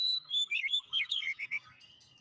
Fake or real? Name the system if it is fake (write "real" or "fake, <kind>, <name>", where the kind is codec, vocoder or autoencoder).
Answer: fake, codec, SNAC